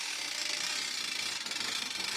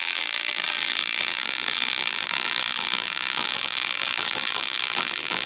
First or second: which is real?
first